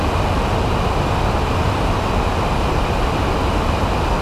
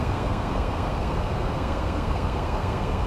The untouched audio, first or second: first